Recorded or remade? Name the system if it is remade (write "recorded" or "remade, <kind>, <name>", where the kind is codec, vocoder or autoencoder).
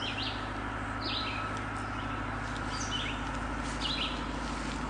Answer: recorded